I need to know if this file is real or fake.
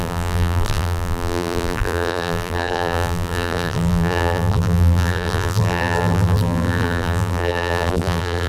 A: fake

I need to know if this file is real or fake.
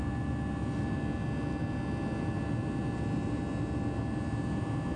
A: real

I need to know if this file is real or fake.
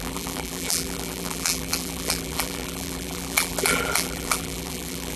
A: fake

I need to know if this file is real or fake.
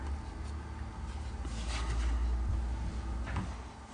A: real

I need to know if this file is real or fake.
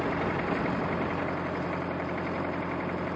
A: real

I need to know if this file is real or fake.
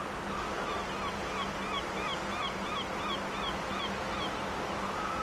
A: real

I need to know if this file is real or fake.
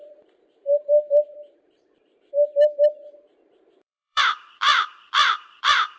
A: fake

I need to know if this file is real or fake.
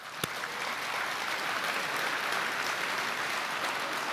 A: real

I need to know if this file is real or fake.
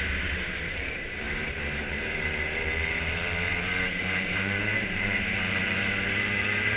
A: fake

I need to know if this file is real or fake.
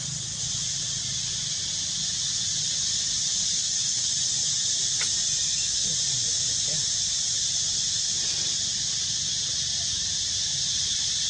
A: real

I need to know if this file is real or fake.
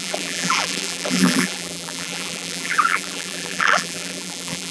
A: fake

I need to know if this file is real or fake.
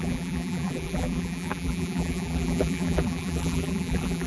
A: fake